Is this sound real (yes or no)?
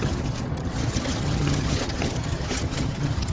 no